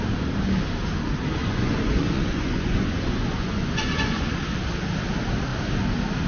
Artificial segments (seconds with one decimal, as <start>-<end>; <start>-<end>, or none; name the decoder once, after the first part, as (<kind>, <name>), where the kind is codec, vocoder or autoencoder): 1.4-4.3 (vocoder, Vocos)